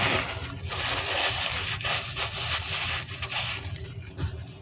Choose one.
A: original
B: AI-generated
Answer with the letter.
A